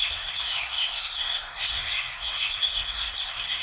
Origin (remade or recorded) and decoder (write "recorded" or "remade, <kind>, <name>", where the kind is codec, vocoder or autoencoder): remade, codec, SNAC